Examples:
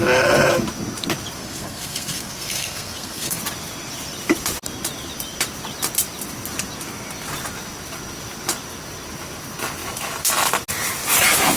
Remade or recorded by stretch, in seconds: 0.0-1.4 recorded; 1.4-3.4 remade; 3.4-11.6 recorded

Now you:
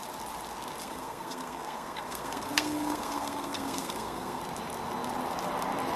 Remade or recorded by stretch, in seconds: 0.0-0.8 recorded; 0.8-4.4 remade; 4.4-6.0 recorded

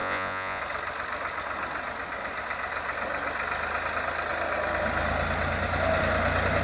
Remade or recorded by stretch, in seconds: 0.0-0.6 remade; 0.6-6.6 recorded